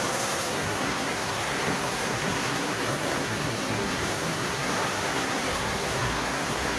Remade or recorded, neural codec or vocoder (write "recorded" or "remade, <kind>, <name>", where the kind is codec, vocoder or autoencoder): remade, codec, SNAC